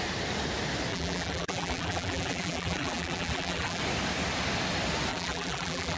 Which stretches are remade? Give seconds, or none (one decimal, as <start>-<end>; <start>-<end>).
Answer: 0.9-3.8; 5.1-6.0